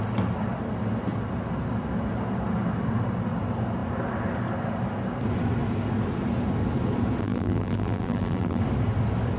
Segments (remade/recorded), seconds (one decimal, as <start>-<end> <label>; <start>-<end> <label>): 0.0-7.2 recorded; 7.2-8.6 remade; 8.6-9.4 recorded